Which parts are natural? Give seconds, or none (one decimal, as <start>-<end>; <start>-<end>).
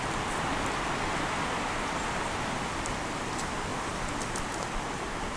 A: 0.0-5.4